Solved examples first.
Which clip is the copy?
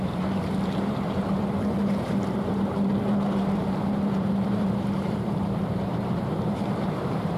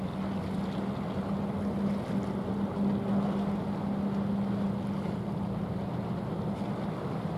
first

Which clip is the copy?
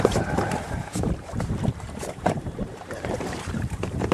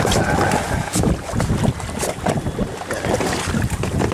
first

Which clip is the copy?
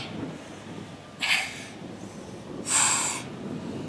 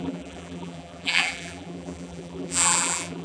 second